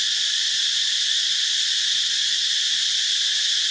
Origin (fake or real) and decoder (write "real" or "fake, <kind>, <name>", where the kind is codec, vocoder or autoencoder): real